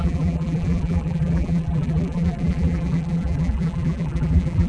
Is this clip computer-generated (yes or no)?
yes